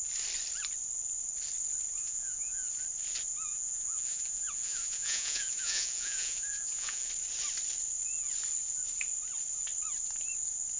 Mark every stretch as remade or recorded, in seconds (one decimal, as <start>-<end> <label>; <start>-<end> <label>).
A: 0.0-2.0 recorded; 2.0-2.7 remade; 2.7-3.5 recorded; 3.5-7.1 remade; 7.1-10.8 recorded